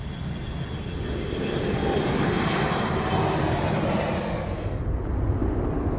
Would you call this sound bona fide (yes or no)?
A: yes